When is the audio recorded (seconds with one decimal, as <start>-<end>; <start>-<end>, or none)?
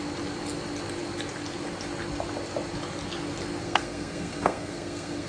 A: 0.0-3.6